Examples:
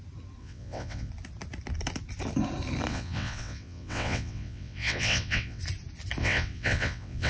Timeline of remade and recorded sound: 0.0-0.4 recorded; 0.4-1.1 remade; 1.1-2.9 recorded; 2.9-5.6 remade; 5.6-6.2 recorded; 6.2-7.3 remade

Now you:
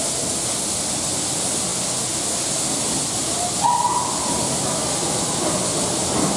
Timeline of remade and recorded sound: 0.0-6.4 recorded

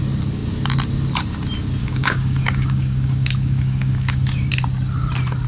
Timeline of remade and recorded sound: 0.0-1.8 recorded; 1.8-4.5 remade; 4.5-5.5 recorded

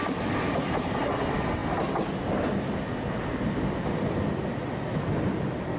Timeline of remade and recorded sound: 0.0-1.0 remade; 1.0-5.8 recorded

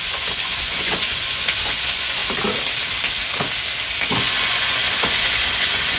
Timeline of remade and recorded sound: 0.0-2.2 remade; 2.2-4.1 recorded; 4.1-6.0 remade